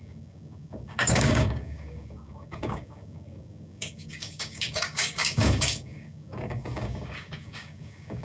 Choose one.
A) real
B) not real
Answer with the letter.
B